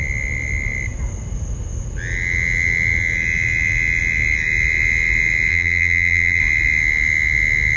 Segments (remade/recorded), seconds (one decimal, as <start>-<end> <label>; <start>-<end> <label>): 0.0-5.5 recorded; 5.5-6.4 remade; 6.4-7.8 recorded